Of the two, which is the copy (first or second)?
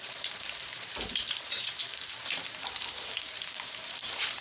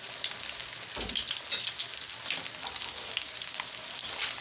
first